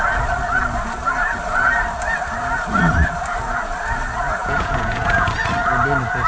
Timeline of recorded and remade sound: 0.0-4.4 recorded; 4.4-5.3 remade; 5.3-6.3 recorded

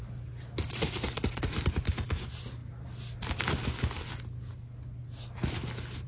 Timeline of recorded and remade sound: 0.0-6.1 recorded

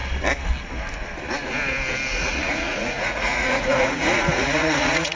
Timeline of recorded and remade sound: 0.0-2.1 recorded; 2.1-5.2 remade

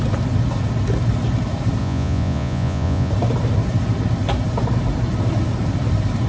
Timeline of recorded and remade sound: 0.0-1.8 recorded; 1.8-3.1 remade; 3.1-6.3 recorded

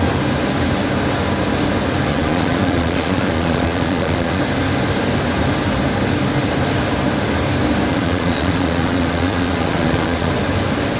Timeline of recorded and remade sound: 0.0-2.1 recorded; 2.1-4.4 remade; 4.4-7.9 recorded; 7.9-10.3 remade; 10.3-11.0 recorded

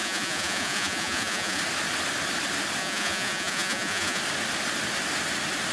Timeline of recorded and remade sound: 0.0-1.6 remade; 1.6-2.8 recorded; 2.8-4.2 remade; 4.2-5.7 recorded

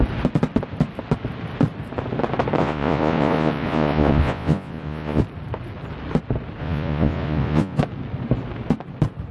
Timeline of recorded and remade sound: 0.0-2.6 recorded; 2.6-5.2 remade; 5.2-6.6 recorded; 6.6-7.8 remade; 7.8-9.3 recorded